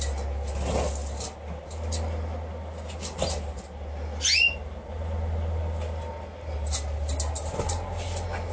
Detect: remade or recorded recorded